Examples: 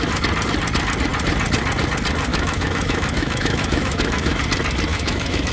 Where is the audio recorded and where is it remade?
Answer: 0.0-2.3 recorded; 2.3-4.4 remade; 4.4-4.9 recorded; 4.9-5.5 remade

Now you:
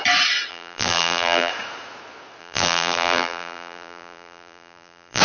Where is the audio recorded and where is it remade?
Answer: 0.0-0.5 recorded; 0.5-1.5 remade; 1.5-2.4 recorded; 2.4-5.2 remade

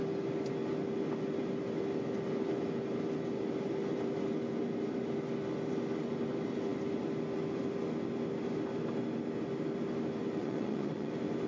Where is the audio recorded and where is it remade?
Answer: 0.0-10.4 recorded; 10.4-11.1 remade; 11.1-11.5 recorded

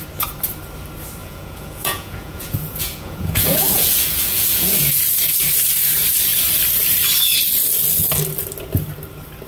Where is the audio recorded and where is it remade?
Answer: 0.0-1.2 recorded; 1.2-5.0 remade; 5.0-9.5 recorded

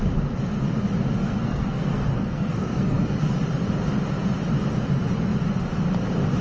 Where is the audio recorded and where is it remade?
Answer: 0.0-1.2 recorded; 1.2-3.2 remade; 3.2-6.4 recorded